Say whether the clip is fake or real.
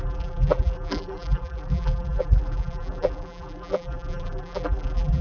fake